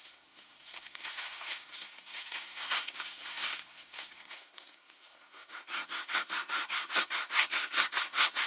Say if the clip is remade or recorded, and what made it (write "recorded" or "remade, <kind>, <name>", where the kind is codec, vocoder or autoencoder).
remade, codec, SNAC